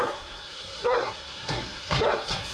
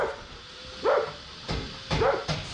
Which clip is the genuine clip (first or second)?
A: second